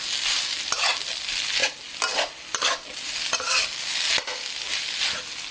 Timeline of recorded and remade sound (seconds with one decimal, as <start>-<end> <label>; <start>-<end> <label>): 0.0-5.5 recorded